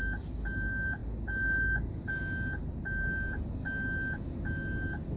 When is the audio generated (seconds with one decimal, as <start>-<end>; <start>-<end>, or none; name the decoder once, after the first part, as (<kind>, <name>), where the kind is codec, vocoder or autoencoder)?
none